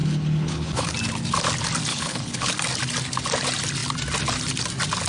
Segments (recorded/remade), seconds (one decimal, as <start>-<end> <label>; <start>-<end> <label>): 0.0-0.9 remade; 0.9-1.9 recorded; 1.9-2.5 remade; 2.5-5.1 recorded